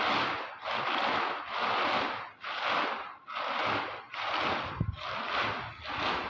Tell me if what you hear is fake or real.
real